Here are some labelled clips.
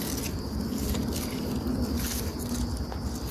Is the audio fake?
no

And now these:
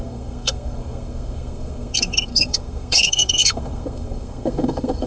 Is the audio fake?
yes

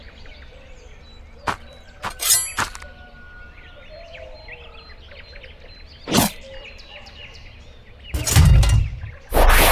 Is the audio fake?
no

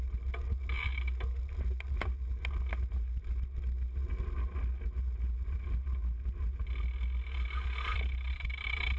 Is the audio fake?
no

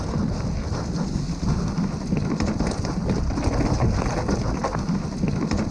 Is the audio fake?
no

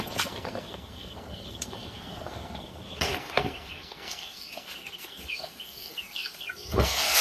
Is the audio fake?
yes